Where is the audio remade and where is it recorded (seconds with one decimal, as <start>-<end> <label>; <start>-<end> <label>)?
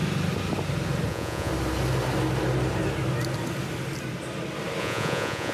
0.0-1.1 recorded; 1.1-1.5 remade; 1.5-4.8 recorded; 4.8-5.5 remade